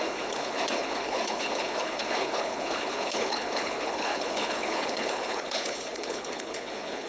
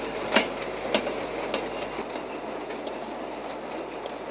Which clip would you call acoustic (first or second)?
second